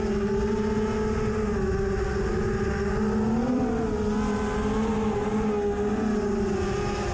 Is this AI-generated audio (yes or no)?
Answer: no